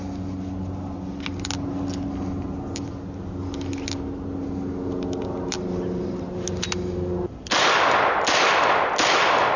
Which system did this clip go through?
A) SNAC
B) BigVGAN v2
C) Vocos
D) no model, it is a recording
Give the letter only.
D